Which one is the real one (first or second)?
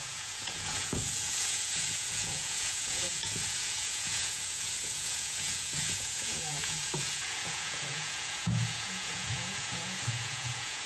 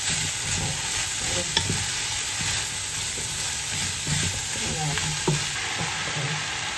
second